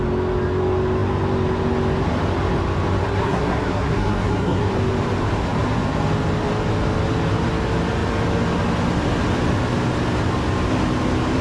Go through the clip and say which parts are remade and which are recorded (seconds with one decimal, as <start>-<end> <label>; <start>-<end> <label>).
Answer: 0.0-3.0 recorded; 3.0-4.7 remade; 4.7-11.4 recorded